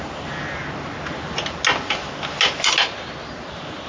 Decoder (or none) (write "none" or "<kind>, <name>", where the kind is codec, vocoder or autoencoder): none